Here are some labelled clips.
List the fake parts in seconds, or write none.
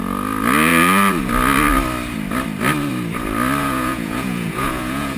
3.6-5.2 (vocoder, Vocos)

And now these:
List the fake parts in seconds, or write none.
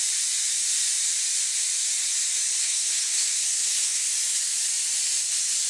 2.6-4.1 (codec, SNAC)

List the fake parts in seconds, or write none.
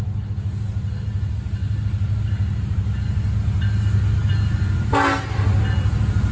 none